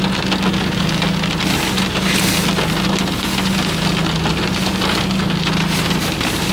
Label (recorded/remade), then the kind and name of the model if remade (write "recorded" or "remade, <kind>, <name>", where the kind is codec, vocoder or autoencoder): recorded